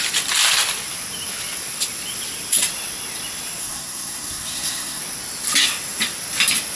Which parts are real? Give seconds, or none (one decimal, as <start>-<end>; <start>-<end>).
0.0-3.6; 5.0-6.8